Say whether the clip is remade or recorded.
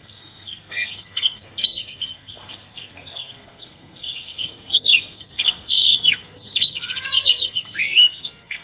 remade